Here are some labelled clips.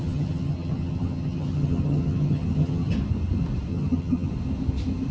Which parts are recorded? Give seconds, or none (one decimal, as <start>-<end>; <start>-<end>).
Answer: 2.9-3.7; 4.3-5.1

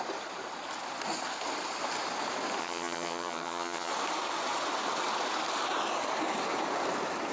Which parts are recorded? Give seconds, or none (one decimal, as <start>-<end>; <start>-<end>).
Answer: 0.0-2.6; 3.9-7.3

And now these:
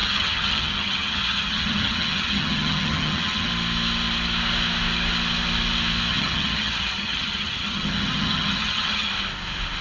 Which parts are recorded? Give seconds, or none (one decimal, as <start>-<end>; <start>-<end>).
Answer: 3.5-6.1; 9.1-9.8